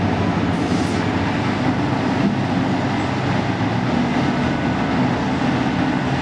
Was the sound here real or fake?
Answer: real